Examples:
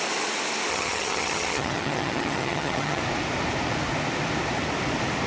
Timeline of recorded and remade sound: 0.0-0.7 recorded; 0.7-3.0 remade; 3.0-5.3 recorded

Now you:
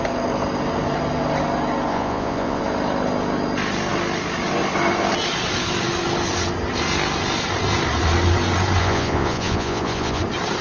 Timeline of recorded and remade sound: 0.0-1.9 recorded; 1.9-2.6 remade; 2.6-8.8 recorded; 8.8-10.2 remade; 10.2-10.6 recorded

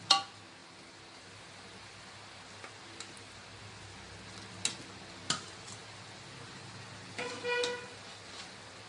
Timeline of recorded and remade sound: 0.0-8.9 recorded

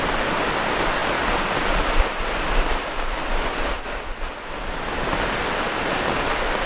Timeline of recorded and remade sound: 0.0-6.7 recorded

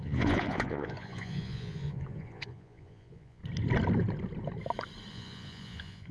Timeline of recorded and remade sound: 0.0-3.4 remade; 3.4-5.1 recorded; 5.1-6.1 remade